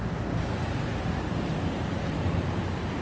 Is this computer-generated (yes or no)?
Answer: no